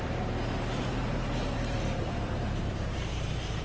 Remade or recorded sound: remade